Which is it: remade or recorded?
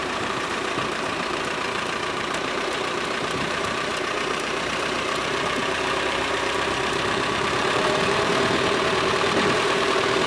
remade